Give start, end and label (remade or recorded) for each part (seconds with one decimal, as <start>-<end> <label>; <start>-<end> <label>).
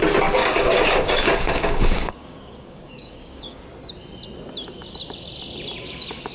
0.0-0.4 recorded; 0.4-3.6 remade; 3.6-6.3 recorded